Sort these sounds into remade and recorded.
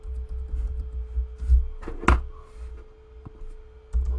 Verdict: recorded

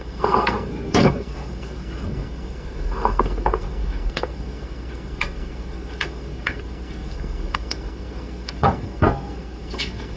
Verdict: remade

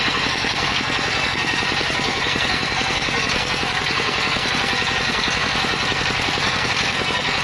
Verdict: remade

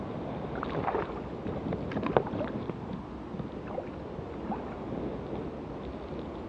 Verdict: recorded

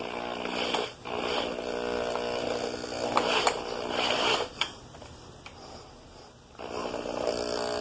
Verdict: recorded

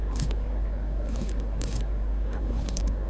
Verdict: remade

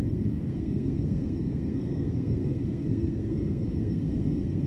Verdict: remade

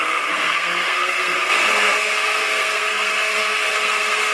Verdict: remade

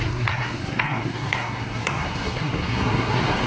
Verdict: remade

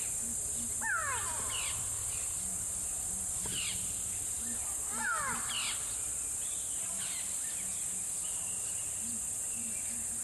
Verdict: recorded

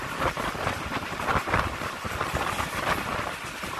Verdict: recorded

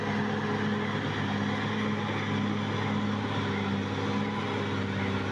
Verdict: recorded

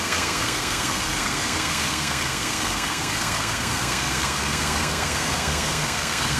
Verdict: remade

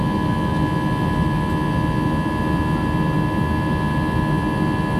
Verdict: recorded